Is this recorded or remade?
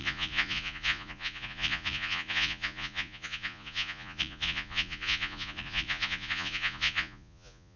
remade